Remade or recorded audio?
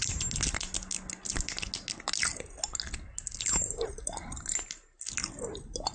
recorded